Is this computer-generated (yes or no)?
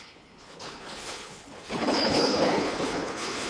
yes